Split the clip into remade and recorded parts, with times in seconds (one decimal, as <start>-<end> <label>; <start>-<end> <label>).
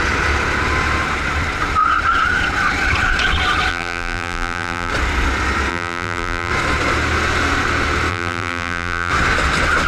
0.0-3.7 recorded; 3.7-4.9 remade; 4.9-5.7 recorded; 5.7-6.5 remade; 6.5-8.1 recorded; 8.1-9.1 remade; 9.1-9.9 recorded